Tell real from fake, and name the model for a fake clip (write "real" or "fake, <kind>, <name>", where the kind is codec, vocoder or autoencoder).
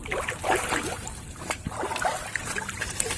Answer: real